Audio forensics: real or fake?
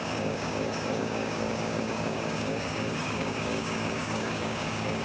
fake